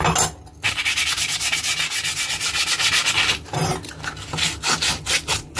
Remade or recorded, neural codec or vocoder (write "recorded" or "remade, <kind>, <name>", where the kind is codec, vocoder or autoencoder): recorded